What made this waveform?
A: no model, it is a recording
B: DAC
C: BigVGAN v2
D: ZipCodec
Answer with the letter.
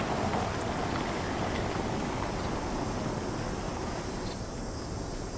A